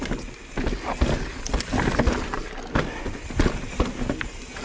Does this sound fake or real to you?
real